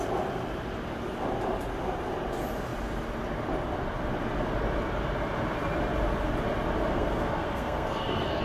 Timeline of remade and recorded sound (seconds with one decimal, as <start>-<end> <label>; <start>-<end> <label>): 0.0-6.9 recorded; 6.9-8.4 remade

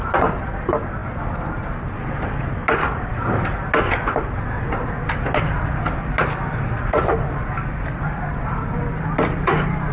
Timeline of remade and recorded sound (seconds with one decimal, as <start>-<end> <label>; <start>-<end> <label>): 0.0-9.9 recorded

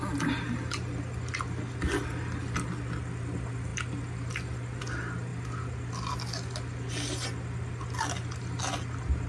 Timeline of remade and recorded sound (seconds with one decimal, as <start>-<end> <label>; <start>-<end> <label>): 0.0-9.3 recorded

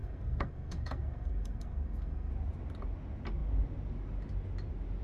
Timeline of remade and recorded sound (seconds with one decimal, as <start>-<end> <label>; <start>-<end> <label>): 0.0-2.3 remade; 2.3-5.0 recorded